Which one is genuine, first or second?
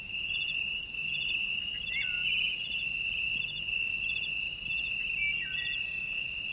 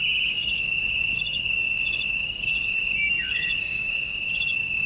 first